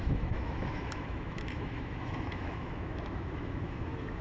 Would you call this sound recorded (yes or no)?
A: no